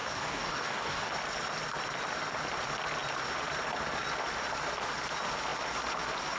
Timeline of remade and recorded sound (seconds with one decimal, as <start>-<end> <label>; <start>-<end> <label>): 0.0-1.1 remade; 1.1-6.4 recorded